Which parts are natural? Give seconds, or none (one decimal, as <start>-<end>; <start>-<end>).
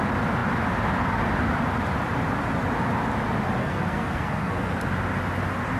0.0-3.6; 4.8-5.8